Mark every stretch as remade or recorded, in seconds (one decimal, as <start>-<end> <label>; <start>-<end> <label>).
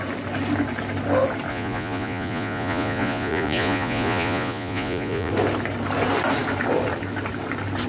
0.0-1.5 recorded; 1.5-5.3 remade; 5.3-7.9 recorded